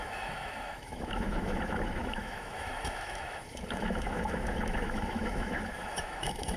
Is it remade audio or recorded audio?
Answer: remade